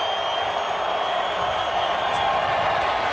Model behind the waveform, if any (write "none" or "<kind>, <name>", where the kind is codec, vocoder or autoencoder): none